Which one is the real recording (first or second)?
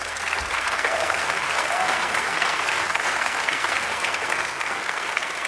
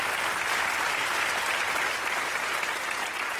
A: second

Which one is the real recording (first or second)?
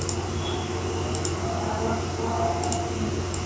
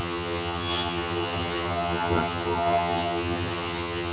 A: first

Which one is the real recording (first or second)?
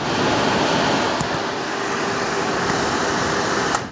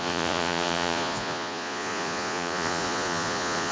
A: first